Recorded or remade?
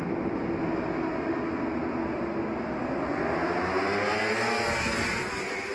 recorded